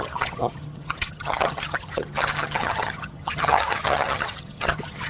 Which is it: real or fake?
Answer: fake